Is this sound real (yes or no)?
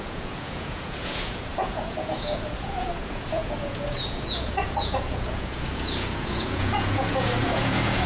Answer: no